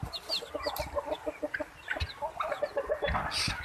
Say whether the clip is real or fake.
real